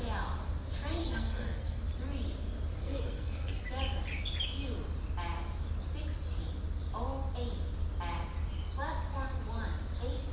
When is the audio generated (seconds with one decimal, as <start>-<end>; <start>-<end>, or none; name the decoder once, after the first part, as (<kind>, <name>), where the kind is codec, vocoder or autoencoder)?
1.0-1.8 (codec, SNAC); 2.8-3.6